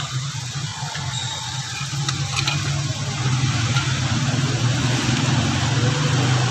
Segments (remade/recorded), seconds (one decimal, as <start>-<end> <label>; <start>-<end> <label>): 0.0-0.7 recorded; 0.7-2.1 remade; 2.1-6.5 recorded